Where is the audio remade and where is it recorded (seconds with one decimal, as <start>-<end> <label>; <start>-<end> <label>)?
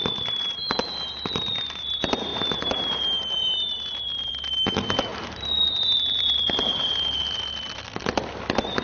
0.0-2.3 recorded; 2.3-4.3 remade; 4.3-5.1 recorded; 5.1-7.2 remade; 7.2-8.8 recorded